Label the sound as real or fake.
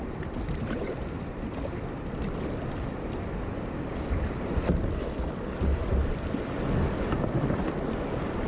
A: fake